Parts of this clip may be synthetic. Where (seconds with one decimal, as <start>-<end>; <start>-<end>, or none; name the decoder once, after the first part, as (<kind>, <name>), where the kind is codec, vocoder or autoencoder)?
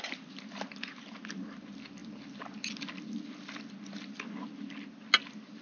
none